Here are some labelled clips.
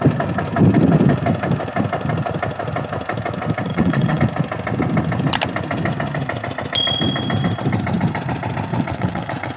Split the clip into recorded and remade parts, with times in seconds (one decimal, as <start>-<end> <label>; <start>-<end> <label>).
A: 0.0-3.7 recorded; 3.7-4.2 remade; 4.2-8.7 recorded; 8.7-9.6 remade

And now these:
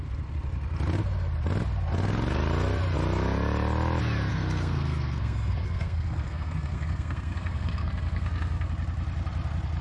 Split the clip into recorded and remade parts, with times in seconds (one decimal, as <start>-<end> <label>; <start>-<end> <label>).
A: 0.0-4.3 recorded; 4.3-8.7 remade; 8.7-9.8 recorded

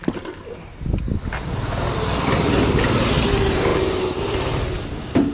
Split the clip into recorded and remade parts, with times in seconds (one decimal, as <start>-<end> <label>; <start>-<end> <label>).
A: 0.0-5.3 recorded